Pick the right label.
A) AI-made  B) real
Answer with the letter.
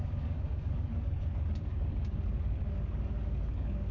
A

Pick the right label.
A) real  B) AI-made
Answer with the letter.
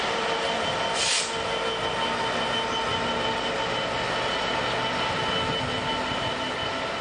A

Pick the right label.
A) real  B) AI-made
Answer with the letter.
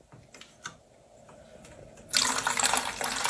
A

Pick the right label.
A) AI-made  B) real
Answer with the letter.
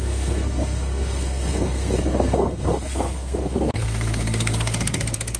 A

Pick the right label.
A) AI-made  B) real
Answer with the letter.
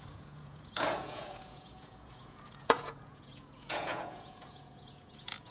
A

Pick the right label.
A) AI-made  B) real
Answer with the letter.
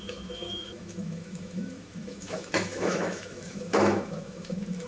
A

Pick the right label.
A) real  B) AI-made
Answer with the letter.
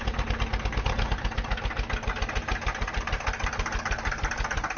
A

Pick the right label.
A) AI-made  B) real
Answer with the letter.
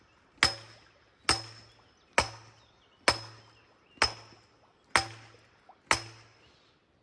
B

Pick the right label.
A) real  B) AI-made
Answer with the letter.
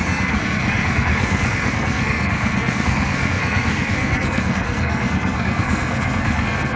B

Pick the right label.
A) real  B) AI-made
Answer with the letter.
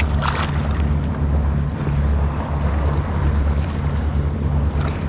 A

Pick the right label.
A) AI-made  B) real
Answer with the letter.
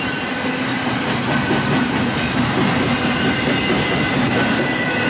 B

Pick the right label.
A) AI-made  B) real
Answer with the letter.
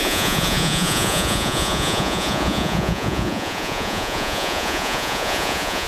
A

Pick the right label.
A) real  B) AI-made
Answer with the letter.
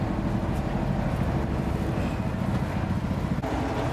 A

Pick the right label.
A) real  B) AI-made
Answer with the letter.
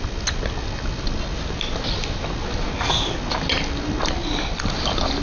A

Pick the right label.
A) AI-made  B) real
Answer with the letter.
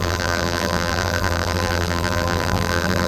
A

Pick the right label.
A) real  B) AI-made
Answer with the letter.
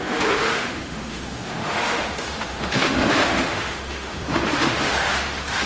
B